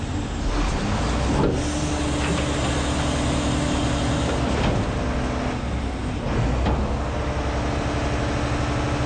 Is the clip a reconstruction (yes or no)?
no